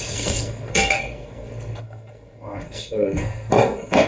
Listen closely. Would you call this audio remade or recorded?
remade